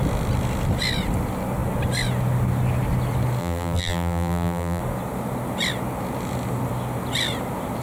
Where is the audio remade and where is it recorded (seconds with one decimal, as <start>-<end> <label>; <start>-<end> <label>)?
0.0-3.4 recorded; 3.4-4.8 remade; 4.8-7.8 recorded